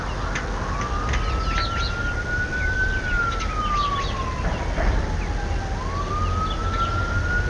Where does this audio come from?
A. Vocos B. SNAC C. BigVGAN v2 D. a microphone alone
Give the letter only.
D